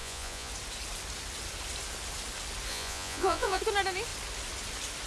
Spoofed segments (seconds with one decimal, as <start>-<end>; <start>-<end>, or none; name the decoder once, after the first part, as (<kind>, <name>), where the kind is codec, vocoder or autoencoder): 0.0-0.5 (vocoder, Vocos); 2.7-3.6